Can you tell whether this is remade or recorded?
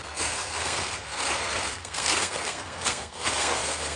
remade